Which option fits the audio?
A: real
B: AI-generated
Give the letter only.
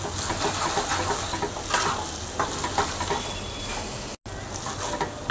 A